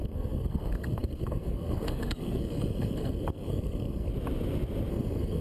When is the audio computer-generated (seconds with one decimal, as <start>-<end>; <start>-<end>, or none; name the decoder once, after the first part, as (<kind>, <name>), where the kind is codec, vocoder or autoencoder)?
0.0-4.1 (codec, SNAC); 4.9-5.4

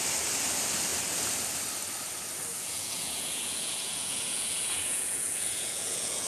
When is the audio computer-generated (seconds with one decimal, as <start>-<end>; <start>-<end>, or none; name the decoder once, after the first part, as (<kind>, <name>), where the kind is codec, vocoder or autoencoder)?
2.5-6.3 (vocoder, Vocos)

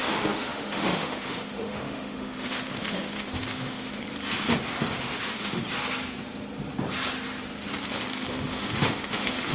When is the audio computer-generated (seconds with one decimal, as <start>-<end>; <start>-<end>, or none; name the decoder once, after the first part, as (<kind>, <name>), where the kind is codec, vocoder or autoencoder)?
0.0-4.0 (autoencoder, DAC-VAE); 4.9-5.6; 8.3-9.5

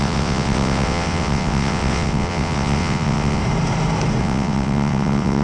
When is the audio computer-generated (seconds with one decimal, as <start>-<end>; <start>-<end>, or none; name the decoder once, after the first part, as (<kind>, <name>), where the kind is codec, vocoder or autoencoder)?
0.0-3.4 (vocoder, WaveNeXt); 4.2-5.4